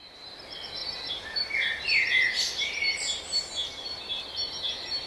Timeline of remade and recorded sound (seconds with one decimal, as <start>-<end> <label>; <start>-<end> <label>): 0.0-0.8 recorded; 0.8-2.4 remade; 2.4-5.1 recorded